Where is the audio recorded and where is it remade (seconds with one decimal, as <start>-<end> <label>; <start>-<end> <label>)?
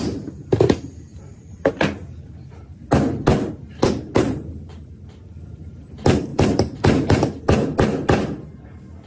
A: 0.0-1.1 recorded; 1.1-1.7 remade; 1.7-6.3 recorded; 6.3-7.4 remade; 7.4-9.1 recorded